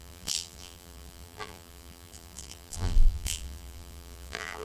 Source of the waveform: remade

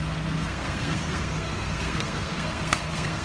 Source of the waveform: remade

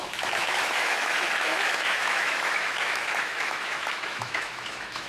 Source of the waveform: remade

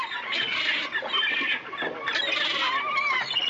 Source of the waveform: recorded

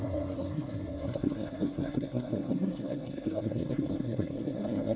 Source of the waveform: remade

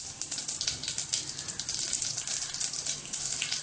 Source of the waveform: recorded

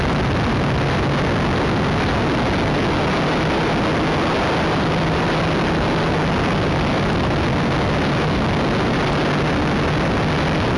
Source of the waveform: recorded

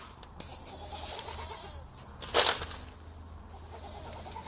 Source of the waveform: recorded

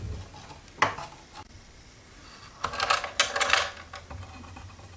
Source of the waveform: recorded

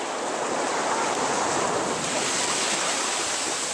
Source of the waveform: recorded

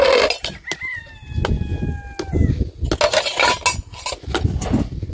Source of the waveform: recorded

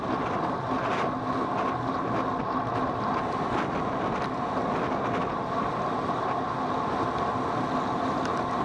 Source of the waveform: recorded